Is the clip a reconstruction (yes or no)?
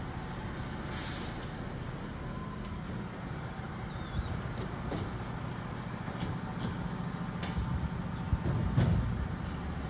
no